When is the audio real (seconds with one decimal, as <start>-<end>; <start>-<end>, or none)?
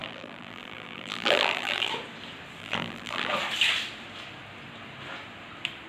1.9-2.6; 3.3-5.9